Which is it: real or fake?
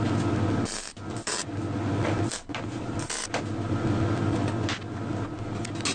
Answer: real